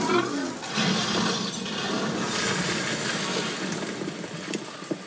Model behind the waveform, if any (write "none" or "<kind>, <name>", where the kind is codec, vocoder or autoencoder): none